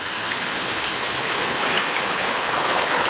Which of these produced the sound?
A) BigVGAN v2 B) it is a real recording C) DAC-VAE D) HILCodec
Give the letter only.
D